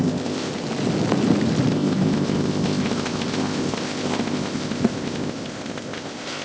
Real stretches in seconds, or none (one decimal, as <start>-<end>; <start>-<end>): 0.5-1.7